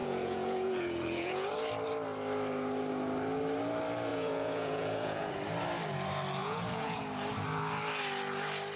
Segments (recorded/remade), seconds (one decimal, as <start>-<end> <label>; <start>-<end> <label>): 0.0-1.5 remade; 1.5-4.1 recorded; 4.1-5.3 remade; 5.3-6.4 recorded; 6.4-7.0 remade; 7.0-8.8 recorded